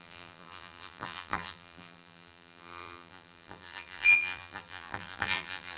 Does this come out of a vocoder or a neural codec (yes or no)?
yes